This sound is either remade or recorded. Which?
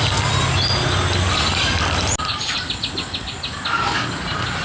recorded